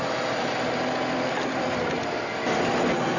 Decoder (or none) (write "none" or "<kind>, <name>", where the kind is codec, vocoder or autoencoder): none